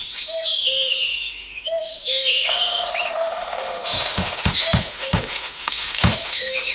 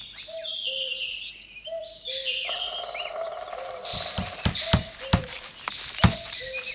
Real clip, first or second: second